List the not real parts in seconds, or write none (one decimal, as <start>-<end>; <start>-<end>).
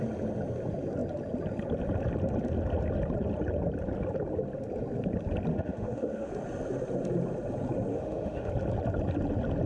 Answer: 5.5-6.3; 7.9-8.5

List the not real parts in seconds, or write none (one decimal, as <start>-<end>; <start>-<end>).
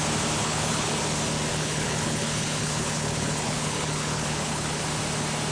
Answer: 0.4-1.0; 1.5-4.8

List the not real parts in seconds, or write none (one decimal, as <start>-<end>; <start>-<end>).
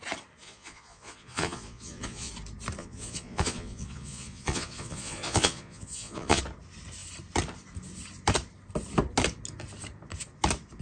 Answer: 0.4-2.3; 2.8-6.4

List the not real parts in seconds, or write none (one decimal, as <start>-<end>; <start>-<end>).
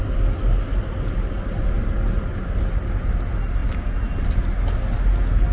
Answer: none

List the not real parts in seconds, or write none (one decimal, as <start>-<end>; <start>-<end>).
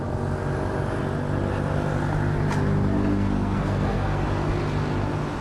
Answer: 3.1-4.2